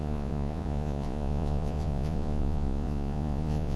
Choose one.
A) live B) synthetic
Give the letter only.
B